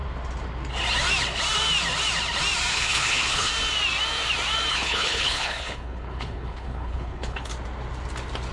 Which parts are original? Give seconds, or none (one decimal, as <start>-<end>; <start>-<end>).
0.0-2.7; 3.5-4.7; 7.5-8.5